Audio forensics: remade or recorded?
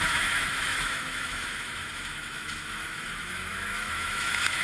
remade